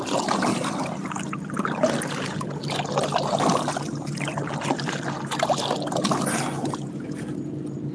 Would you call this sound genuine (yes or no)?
yes